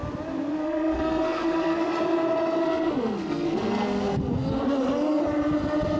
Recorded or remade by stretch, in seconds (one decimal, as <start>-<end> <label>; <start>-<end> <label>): 0.0-0.6 recorded; 0.6-1.9 remade; 1.9-2.6 recorded; 2.6-4.2 remade; 4.2-6.0 recorded